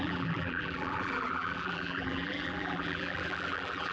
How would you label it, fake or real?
fake